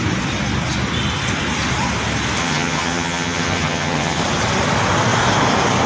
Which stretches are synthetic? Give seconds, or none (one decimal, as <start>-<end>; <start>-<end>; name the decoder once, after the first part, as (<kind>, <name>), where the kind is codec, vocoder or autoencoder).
2.4-4.2 (vocoder, HiFi-GAN)